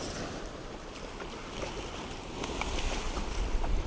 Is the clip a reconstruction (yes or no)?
yes